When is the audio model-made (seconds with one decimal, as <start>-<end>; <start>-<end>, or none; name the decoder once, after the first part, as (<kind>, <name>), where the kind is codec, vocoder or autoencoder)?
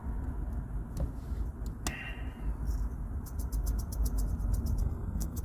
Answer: 4.8-5.4 (codec, SNAC)